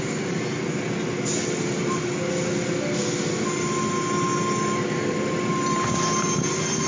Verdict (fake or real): real